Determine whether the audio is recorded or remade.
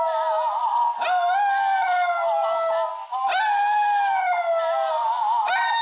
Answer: recorded